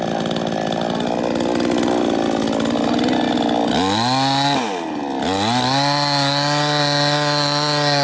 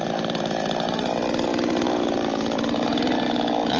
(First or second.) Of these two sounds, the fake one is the second